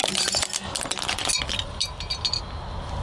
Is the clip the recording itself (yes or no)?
yes